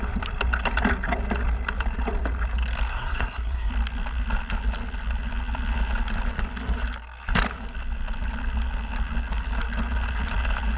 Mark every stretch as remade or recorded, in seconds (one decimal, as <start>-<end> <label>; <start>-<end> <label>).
0.0-2.9 recorded; 2.9-3.7 remade; 3.7-10.8 recorded